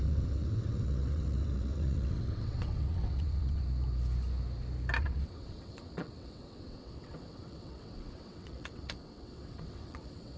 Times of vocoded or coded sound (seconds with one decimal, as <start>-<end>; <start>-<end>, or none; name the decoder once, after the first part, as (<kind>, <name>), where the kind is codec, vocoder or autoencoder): 0.0-3.6 (vocoder, WaveNeXt); 5.0-10.4